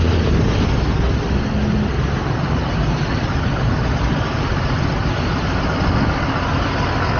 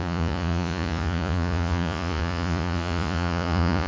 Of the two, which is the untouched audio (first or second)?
first